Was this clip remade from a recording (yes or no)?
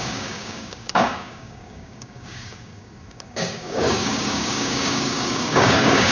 yes